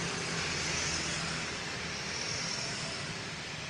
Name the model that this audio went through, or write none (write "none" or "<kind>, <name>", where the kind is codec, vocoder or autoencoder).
none